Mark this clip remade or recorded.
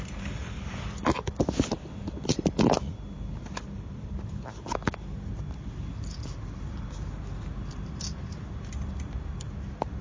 recorded